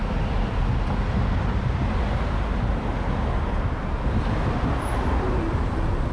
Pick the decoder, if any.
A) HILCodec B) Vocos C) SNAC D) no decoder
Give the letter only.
D